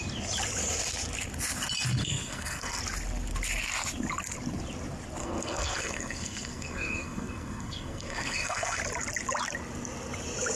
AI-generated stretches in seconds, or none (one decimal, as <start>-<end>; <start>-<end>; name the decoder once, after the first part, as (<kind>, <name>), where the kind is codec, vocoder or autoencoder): 2.0-2.8 (codec, SNAC); 5.2-8.8